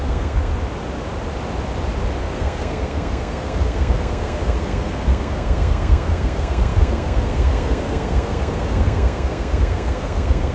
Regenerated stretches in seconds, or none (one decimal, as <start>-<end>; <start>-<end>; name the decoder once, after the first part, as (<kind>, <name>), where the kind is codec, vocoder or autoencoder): 0.0-0.5 (codec, SNAC); 2.2-10.5